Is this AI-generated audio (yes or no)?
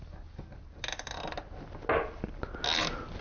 no